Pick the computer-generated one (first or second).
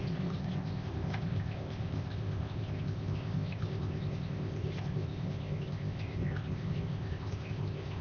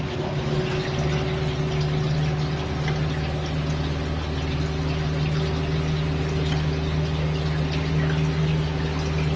first